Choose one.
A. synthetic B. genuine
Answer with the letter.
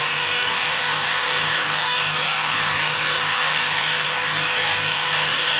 A